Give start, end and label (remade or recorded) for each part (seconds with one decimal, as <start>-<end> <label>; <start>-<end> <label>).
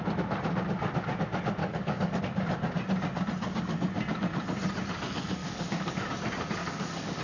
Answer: 0.0-1.6 recorded; 1.6-2.2 remade; 2.2-5.4 recorded; 5.4-6.1 remade; 6.1-6.6 recorded; 6.6-7.2 remade